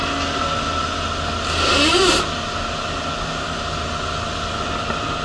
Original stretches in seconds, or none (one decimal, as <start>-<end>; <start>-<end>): 0.0-5.2